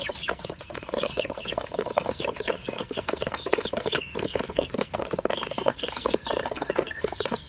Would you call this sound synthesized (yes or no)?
yes